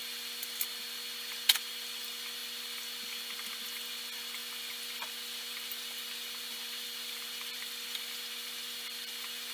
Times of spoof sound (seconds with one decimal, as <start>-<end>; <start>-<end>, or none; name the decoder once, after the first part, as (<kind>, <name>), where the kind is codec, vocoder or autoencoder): 4.4-9.5 (vocoder, BigVGAN v2)